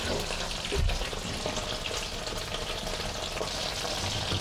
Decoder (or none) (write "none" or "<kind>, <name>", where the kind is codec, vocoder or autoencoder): vocoder, BigVGAN v2